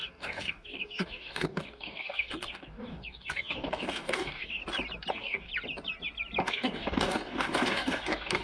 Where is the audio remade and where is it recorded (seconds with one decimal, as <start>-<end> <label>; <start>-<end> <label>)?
0.0-4.6 remade; 4.6-5.1 recorded; 5.1-5.5 remade; 5.5-6.4 recorded; 6.4-8.4 remade